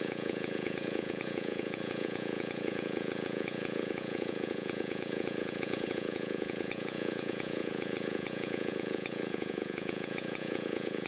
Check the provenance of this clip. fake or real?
fake